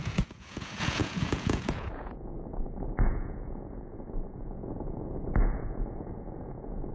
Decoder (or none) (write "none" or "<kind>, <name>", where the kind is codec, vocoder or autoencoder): vocoder, Vocos